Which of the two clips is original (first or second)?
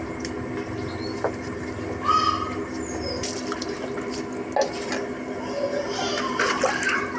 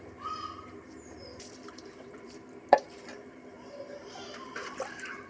first